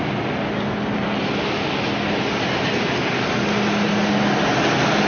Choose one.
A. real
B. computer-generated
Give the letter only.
A